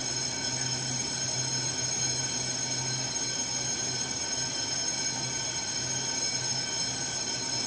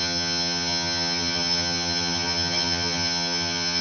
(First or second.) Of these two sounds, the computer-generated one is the second